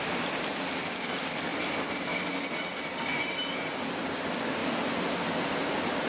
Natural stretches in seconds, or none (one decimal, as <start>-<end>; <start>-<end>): 0.0-6.1